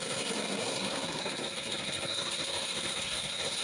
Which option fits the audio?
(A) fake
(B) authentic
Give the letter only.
A